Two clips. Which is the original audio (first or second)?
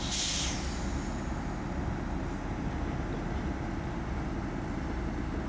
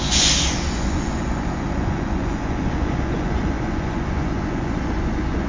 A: first